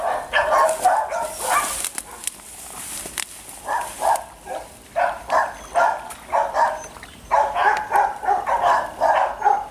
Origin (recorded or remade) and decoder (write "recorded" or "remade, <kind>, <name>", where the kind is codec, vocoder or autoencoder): recorded